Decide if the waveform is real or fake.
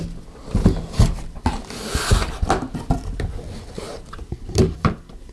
real